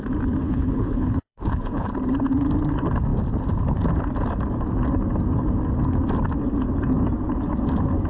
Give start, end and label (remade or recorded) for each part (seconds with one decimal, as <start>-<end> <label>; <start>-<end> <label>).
0.0-0.4 recorded; 0.4-1.9 remade; 1.9-8.1 recorded